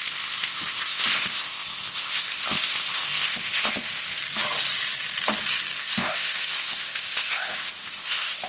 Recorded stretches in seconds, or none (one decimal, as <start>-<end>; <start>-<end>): 4.2-5.8